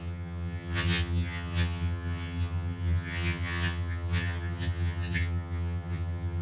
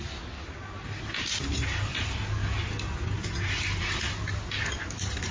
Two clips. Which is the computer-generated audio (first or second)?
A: first